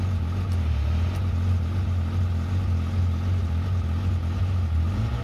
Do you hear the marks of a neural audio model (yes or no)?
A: no